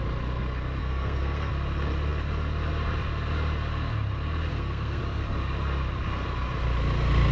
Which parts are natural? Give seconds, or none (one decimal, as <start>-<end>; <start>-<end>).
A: 0.0-0.8; 1.5-4.5; 5.0-7.3